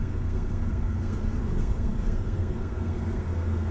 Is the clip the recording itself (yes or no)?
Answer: no